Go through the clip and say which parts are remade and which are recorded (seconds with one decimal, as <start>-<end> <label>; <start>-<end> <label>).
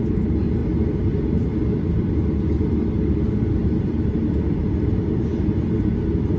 0.0-3.6 recorded; 3.6-4.2 remade; 4.2-6.4 recorded